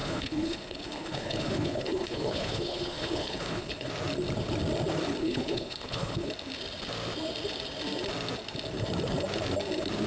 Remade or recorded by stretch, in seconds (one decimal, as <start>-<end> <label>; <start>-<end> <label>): 0.0-3.9 remade; 3.9-5.2 recorded; 5.2-6.3 remade; 6.3-10.1 recorded